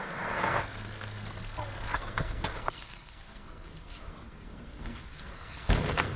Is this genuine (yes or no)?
no